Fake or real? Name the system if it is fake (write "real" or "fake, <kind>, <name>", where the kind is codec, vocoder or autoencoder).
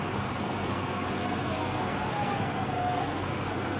fake, codec, SNAC